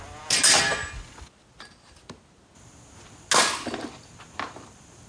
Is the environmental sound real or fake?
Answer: real